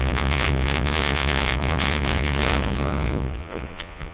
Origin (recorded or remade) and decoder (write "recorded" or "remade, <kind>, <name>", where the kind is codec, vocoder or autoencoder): remade, vocoder, Vocos